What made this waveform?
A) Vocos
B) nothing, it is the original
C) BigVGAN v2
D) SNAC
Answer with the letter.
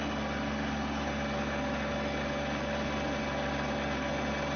B